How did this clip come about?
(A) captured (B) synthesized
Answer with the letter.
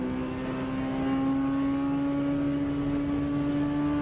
A